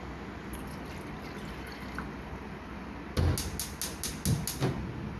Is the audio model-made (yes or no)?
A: no